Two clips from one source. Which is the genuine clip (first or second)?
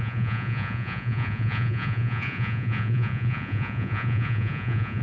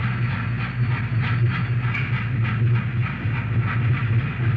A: second